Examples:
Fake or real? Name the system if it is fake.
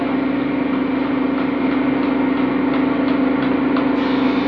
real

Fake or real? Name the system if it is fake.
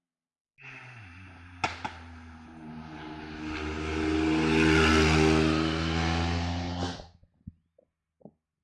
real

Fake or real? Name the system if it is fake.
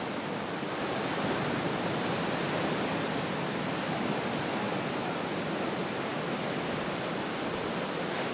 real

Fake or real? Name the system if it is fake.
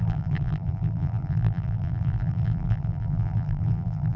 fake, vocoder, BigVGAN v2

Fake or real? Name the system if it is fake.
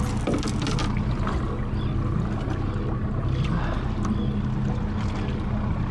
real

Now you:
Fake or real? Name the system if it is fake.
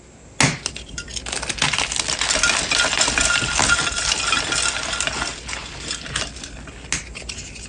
real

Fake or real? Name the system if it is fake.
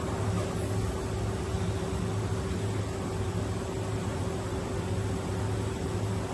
real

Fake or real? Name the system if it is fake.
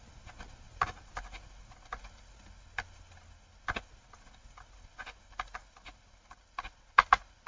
real